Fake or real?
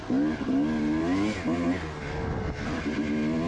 real